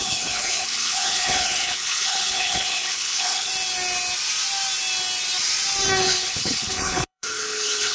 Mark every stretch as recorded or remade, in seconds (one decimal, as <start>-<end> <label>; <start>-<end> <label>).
0.0-3.5 remade; 3.5-6.0 recorded; 6.0-7.9 remade